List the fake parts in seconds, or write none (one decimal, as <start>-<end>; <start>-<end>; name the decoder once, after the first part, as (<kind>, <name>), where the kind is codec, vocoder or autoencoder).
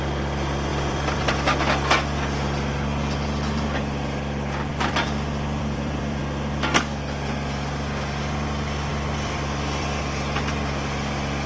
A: 0.7-1.3 (vocoder, BigVGAN v2); 4.7-6.2; 8.9-10.0